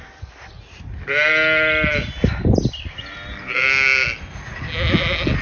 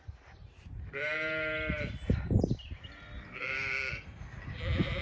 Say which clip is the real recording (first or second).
first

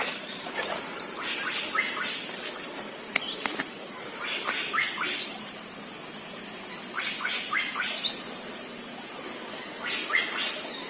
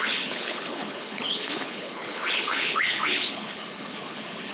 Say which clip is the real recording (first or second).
first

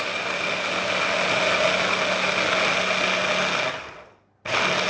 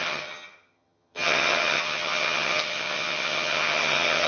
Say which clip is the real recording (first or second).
first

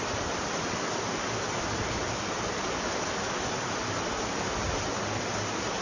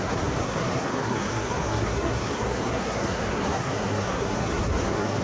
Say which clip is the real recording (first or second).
first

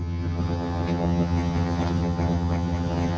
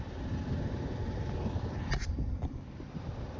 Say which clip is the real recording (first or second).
second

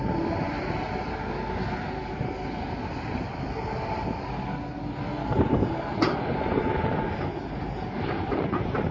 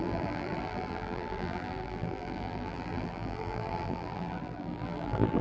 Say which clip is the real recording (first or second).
first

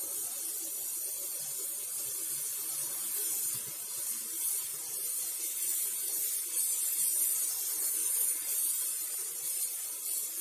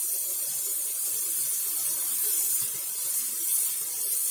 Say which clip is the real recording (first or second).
first